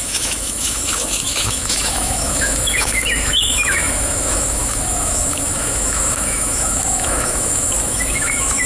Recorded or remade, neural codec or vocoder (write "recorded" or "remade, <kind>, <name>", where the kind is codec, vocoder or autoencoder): remade, autoencoder, DAC-VAE